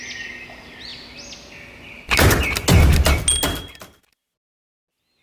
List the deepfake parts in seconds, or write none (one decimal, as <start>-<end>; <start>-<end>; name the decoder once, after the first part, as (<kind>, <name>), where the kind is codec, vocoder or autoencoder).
none